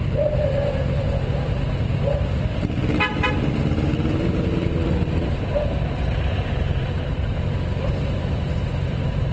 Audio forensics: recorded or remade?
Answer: remade